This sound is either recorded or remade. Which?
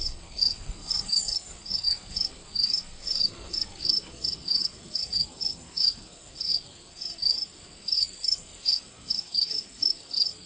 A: remade